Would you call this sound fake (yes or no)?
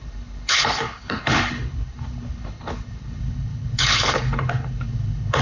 yes